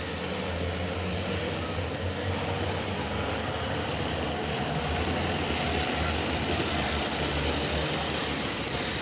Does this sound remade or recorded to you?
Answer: recorded